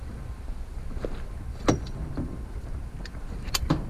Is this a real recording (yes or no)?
yes